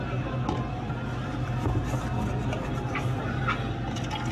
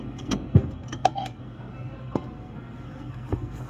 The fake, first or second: second